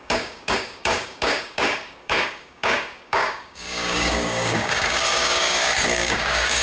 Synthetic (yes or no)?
yes